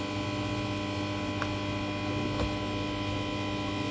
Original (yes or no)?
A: yes